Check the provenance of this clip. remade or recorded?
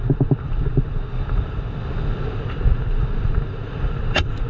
remade